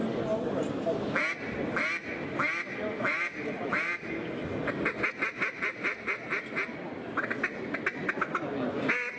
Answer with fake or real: real